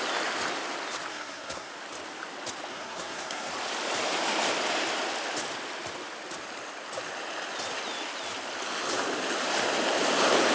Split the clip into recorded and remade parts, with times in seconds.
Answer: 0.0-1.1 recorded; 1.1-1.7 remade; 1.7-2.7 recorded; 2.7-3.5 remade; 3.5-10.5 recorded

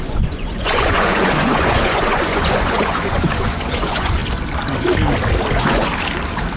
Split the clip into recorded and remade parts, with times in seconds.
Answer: 0.0-4.2 remade; 4.2-5.5 recorded; 5.5-5.9 remade; 5.9-6.6 recorded

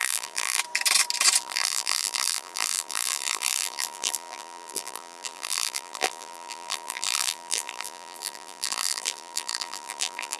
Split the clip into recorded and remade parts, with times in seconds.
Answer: 0.0-0.6 remade; 0.6-1.4 recorded; 1.4-10.4 remade